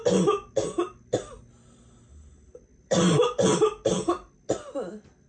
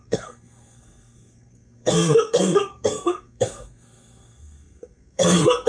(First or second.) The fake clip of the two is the second